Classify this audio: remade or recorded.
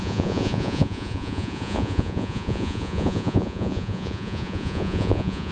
remade